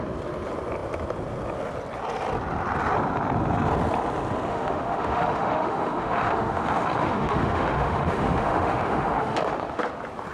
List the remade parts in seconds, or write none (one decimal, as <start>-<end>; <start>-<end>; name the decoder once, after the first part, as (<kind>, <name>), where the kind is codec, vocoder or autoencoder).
4.5-9.8 (autoencoder, DAC-VAE)